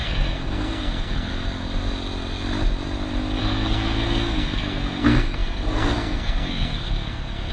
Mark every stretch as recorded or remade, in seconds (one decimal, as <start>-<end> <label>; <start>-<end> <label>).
0.0-1.3 remade; 1.3-3.4 recorded; 3.4-7.5 remade